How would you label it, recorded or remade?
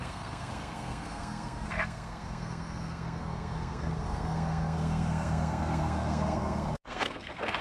remade